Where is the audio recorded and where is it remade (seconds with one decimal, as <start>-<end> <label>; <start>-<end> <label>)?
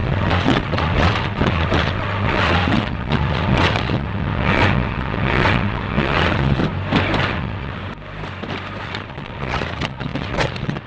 0.0-6.6 remade; 6.6-7.2 recorded; 7.2-7.8 remade; 7.8-8.8 recorded; 8.8-10.9 remade